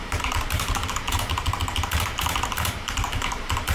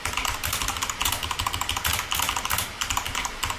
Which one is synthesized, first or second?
first